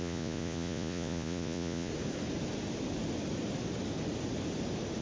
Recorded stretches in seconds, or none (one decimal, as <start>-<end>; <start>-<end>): 1.9-5.0